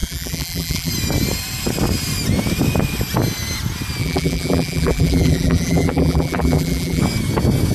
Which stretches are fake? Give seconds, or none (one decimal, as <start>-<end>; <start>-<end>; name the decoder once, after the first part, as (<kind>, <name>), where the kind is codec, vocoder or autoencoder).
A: 0.0-0.9 (vocoder, BigVGAN v2); 4.0-7.0